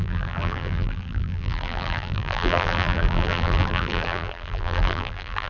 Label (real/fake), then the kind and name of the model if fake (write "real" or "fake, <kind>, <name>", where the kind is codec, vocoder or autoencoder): fake, vocoder, BigVGAN v2